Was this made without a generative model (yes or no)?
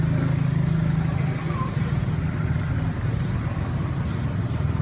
yes